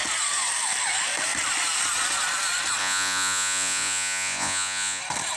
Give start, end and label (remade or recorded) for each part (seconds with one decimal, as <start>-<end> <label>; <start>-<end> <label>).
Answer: 0.0-2.8 recorded; 2.8-5.0 remade; 5.0-5.4 recorded